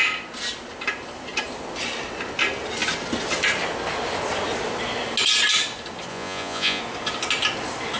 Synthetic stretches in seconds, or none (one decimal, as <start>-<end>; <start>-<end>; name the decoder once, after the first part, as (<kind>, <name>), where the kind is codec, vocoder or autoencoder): 6.1-6.8 (vocoder, Vocos)